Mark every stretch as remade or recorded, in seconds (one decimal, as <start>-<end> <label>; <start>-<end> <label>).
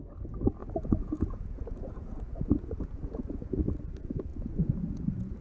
0.0-0.6 recorded; 0.6-3.6 remade; 3.6-4.3 recorded; 4.3-5.4 remade